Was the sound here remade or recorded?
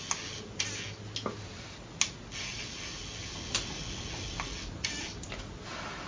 recorded